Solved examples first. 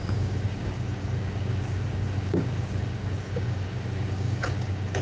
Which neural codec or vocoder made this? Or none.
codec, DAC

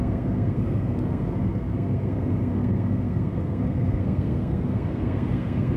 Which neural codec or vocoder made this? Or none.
codec, SNAC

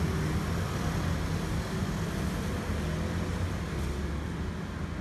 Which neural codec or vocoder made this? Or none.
none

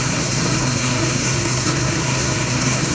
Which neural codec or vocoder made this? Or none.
codec, SNAC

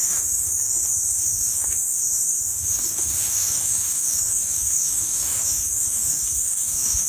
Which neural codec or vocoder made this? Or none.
codec, DAC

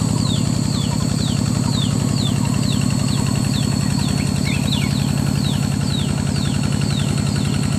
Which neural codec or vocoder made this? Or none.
none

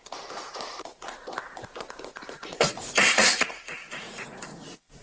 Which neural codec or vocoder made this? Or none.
vocoder, Vocos